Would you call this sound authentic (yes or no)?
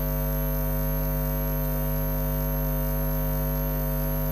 yes